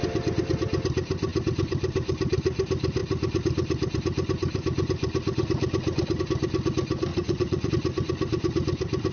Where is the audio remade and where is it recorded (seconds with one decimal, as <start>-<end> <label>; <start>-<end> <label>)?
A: 0.0-7.1 recorded; 7.1-7.7 remade; 7.7-9.1 recorded